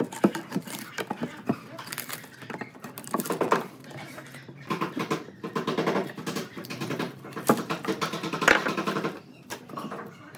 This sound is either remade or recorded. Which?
remade